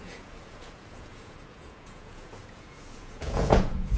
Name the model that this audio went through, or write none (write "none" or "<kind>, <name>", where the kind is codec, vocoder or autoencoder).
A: vocoder, Vocos